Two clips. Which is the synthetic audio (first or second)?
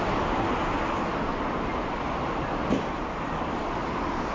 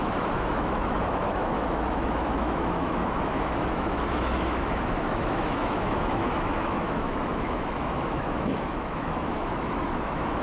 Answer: second